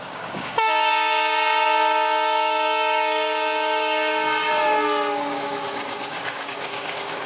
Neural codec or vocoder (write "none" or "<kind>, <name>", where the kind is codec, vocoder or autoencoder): codec, DAC